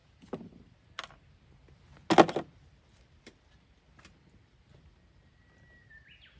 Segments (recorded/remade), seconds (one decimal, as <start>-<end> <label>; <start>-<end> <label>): 0.0-6.4 recorded